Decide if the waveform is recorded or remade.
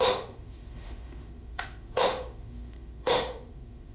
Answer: remade